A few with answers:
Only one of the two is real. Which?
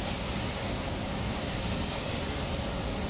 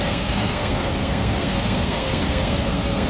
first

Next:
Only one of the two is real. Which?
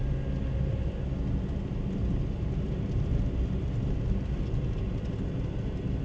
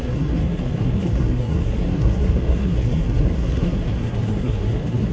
first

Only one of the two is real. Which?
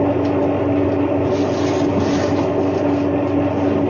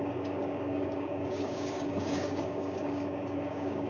first